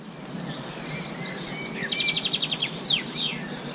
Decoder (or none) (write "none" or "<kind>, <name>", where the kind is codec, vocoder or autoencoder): none